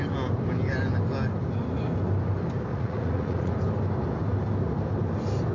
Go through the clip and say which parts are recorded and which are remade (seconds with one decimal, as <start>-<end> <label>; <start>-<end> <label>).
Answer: 0.0-2.7 recorded; 2.7-3.5 remade; 3.5-5.5 recorded